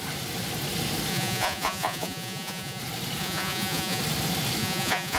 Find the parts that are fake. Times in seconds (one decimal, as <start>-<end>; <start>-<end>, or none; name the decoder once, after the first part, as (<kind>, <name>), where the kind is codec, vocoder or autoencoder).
1.1-2.8 (vocoder, Vocos); 3.2-4.0; 4.6-5.2